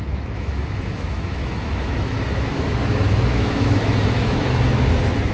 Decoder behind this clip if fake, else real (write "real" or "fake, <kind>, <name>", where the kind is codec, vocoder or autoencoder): fake, autoencoder, DAC-VAE